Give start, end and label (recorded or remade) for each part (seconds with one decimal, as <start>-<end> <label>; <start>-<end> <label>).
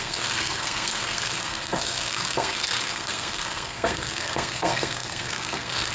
0.0-5.9 remade